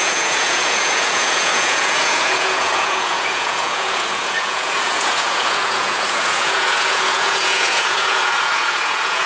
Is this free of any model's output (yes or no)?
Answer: no